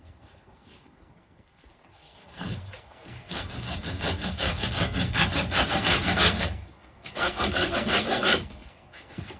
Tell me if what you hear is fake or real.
fake